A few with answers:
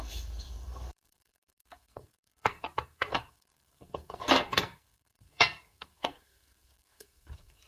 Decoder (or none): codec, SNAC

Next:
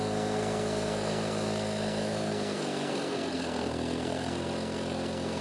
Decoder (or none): codec, SNAC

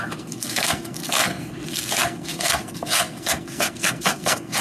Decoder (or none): codec, SNAC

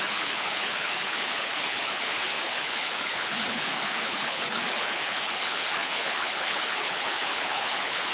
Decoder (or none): codec, HILCodec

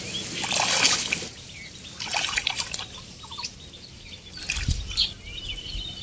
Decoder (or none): none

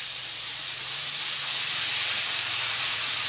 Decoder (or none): vocoder, Vocos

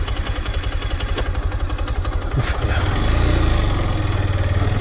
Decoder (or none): none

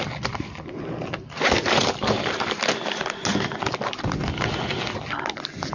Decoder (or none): none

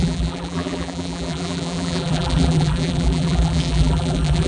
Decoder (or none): vocoder, BigVGAN v2